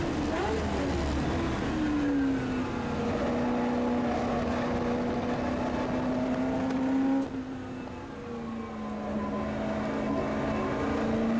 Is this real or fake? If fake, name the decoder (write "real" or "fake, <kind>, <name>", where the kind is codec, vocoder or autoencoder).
real